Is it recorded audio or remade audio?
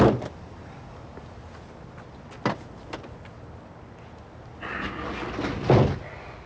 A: recorded